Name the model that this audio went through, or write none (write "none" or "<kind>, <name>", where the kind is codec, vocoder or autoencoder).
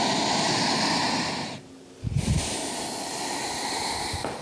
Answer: none